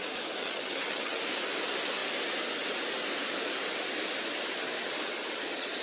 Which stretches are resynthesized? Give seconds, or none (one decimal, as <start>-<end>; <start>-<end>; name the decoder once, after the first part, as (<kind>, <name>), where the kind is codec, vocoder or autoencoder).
0.4-1.2 (vocoder, HiFi-GAN)